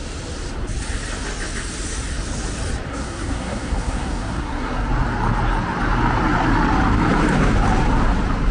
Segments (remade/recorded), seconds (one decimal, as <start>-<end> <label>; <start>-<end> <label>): 0.0-2.9 recorded; 2.9-4.9 remade; 4.9-8.5 recorded